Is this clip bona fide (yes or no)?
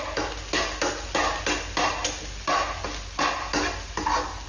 yes